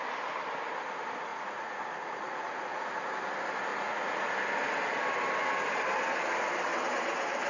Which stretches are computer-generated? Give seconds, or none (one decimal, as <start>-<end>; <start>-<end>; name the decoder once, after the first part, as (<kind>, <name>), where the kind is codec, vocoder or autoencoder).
1.3-3.1 (vocoder, Vocos); 3.7-4.3